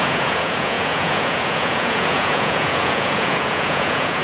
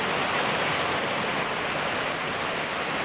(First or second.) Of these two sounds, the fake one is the first